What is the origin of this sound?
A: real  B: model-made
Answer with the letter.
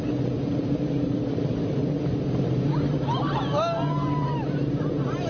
B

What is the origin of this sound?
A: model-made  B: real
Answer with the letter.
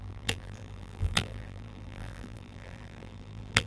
A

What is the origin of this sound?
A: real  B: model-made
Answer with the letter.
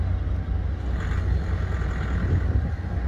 A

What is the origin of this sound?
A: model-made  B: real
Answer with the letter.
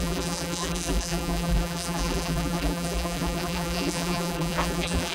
A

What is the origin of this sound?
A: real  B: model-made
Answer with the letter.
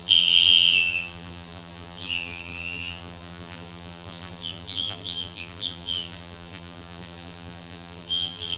B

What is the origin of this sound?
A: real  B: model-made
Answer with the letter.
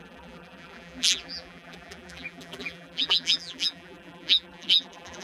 B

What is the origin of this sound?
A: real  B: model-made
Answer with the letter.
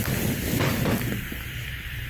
B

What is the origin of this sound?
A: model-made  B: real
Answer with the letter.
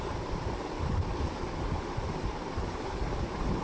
A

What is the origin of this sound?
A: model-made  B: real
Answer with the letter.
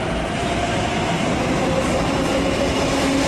A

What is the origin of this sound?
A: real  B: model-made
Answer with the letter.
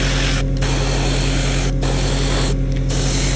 A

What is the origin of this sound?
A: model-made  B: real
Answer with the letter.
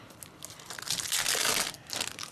B